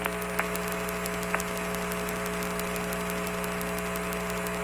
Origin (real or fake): real